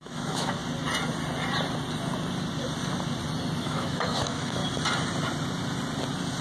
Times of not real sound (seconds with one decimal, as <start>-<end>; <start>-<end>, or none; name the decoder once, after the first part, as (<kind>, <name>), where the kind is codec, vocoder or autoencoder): 0.0-0.6 (autoencoder, DAC-VAE); 3.6-4.6